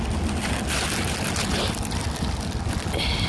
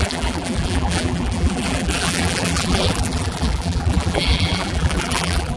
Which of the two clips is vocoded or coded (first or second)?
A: second